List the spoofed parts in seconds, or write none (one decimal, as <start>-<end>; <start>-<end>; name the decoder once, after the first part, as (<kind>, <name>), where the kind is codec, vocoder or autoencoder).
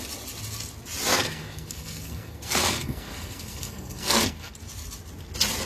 1.1-4.5 (codec, SNAC)